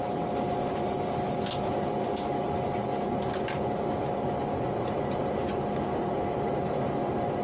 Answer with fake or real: real